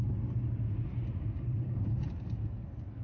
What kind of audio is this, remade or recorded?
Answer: recorded